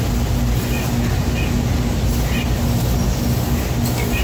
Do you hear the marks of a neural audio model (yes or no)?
no